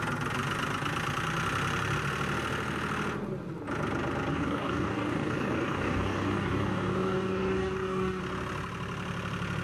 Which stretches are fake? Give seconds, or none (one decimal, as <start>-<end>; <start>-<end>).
4.3-8.2